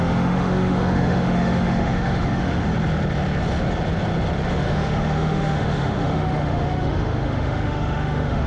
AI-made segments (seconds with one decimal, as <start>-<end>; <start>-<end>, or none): 0.0-2.7; 4.5-8.5